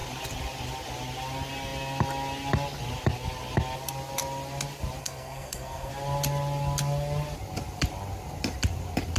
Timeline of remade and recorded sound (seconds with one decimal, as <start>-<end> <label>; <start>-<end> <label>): 0.0-5.0 recorded; 5.0-5.9 remade; 5.9-9.2 recorded